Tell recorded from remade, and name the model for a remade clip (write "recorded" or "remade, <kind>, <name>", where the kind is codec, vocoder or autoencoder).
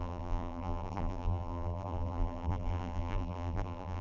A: remade, vocoder, BigVGAN v2